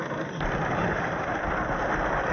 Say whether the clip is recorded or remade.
recorded